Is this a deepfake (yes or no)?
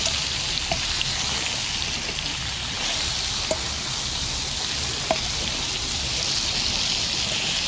no